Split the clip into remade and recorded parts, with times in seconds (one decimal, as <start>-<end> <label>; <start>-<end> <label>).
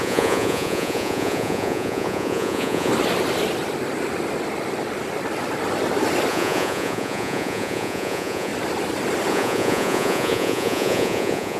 0.0-2.9 remade; 2.9-6.3 recorded; 6.3-8.5 remade; 8.5-9.3 recorded; 9.3-11.6 remade